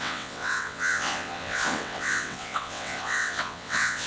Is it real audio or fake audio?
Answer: fake